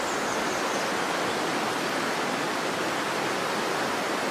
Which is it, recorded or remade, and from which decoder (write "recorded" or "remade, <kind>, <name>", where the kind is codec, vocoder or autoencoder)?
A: recorded